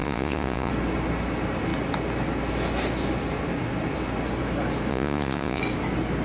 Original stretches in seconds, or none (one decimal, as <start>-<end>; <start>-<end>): 0.7-4.9; 5.6-6.2